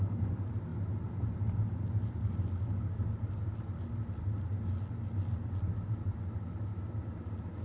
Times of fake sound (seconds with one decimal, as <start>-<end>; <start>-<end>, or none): none